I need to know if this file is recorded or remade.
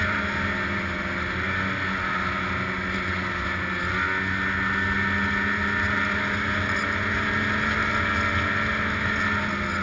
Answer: recorded